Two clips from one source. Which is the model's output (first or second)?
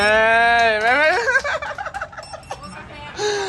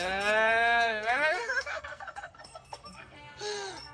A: second